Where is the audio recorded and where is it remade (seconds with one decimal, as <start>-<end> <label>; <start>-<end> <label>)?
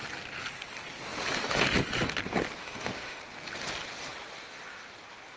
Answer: 0.0-2.6 recorded; 2.6-3.2 remade; 3.2-5.4 recorded